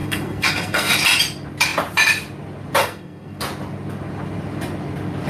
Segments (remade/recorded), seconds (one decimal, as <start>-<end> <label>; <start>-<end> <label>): 0.0-0.9 remade; 0.9-2.8 recorded; 2.8-3.4 remade; 3.4-5.3 recorded